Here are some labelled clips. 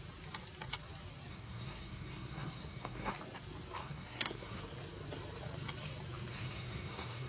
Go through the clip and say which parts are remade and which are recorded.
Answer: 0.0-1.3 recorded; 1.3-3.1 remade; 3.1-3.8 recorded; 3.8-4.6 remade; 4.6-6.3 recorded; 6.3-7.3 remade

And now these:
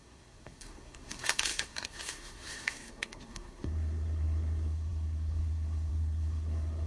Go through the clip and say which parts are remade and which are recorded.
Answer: 0.0-6.9 remade